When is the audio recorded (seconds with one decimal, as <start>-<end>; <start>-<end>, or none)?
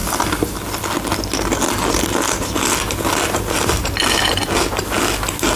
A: 0.0-5.6